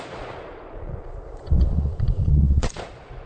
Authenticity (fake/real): fake